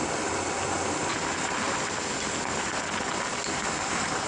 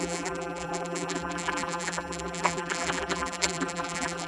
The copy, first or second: second